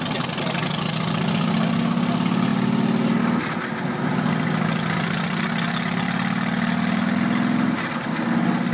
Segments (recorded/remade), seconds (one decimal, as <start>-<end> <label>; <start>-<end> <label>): 0.0-8.7 recorded